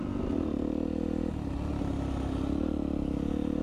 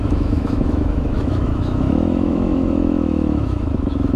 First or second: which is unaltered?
first